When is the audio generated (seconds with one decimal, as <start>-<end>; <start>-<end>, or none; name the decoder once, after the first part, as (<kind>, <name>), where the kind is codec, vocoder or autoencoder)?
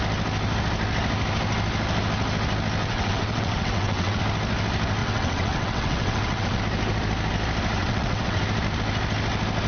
2.8-4.2 (vocoder, WaveNeXt); 5.0-6.6; 7.8-8.4